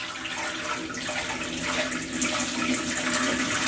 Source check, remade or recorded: recorded